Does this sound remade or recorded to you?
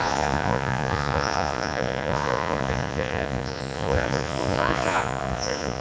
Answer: remade